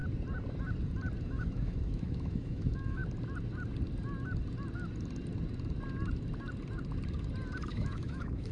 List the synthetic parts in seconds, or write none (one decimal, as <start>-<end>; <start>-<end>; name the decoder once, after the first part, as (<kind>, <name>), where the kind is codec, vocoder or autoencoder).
1.2-3.0 (autoencoder, DAC-VAE); 7.7-8.5